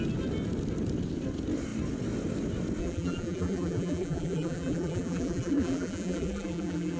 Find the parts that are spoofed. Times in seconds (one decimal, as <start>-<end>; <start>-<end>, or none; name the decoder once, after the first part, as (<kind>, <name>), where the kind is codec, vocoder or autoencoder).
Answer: 2.8-7.0 (vocoder, BigVGAN v2)